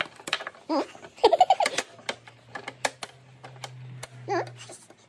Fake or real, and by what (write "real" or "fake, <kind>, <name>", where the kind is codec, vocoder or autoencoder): real